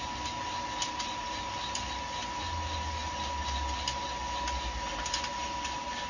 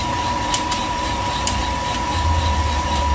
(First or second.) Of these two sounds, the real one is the first